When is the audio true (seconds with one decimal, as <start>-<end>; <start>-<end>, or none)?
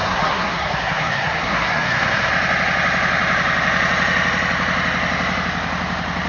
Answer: 2.3-6.3